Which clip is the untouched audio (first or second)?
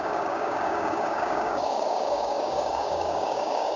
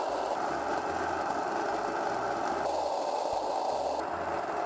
second